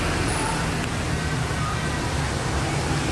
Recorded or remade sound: recorded